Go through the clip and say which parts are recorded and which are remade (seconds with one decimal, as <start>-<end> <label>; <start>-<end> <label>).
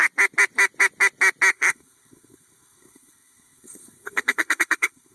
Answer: 0.0-1.5 recorded; 1.5-5.1 remade